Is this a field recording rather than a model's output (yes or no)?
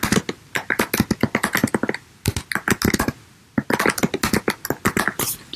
yes